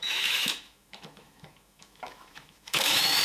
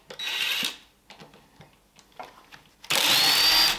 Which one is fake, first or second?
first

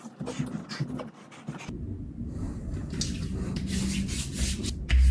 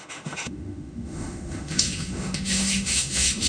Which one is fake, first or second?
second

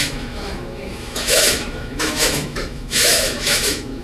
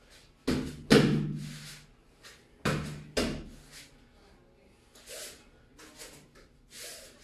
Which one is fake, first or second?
first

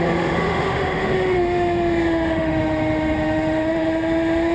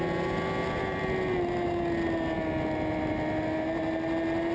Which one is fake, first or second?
first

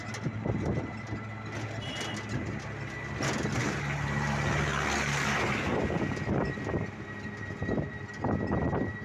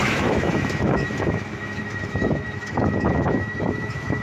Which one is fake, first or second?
second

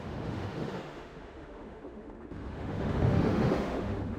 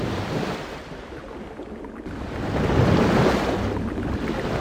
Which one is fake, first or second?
first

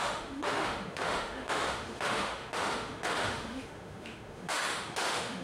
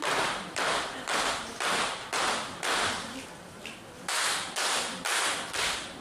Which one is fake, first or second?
first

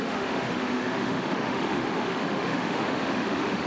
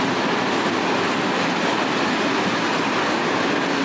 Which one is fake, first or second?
first